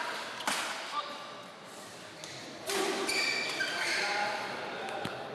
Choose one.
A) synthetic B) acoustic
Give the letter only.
B